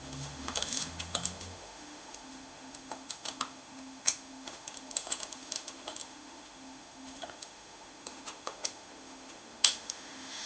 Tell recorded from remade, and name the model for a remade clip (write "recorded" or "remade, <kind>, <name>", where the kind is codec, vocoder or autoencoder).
remade, autoencoder, DAC-VAE